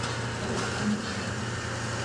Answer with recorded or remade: recorded